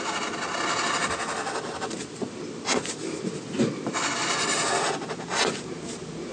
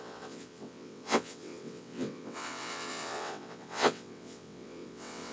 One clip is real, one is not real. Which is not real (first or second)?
second